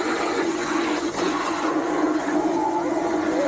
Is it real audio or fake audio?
fake